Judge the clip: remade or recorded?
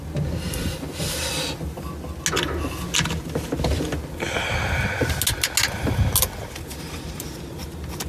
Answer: recorded